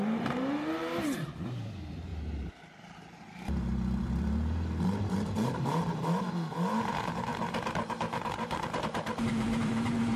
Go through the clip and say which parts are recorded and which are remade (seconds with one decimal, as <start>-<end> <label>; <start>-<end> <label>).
0.0-2.1 remade; 2.1-2.8 recorded; 2.8-10.2 remade